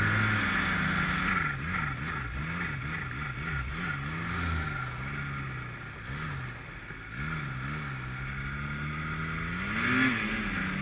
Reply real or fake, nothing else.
real